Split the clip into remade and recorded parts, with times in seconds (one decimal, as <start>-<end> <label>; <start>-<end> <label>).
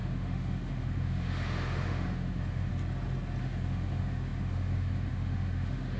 0.0-2.7 remade; 2.7-3.4 recorded; 3.4-6.0 remade